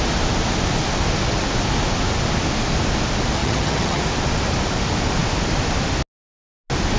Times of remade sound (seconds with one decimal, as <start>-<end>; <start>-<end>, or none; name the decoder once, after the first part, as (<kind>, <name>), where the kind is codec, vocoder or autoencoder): 3.4-4.0 (vocoder, HiFi-GAN)